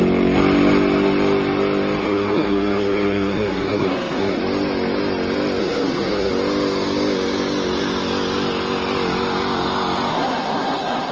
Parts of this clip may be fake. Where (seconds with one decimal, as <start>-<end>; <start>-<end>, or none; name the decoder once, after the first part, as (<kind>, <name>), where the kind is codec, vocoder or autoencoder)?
2.0-4.4 (codec, SNAC); 5.6-6.3; 10.1-11.1